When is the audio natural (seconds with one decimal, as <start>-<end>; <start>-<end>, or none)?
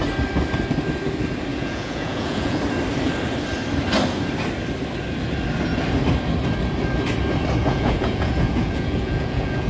0.0-1.5; 2.6-7.6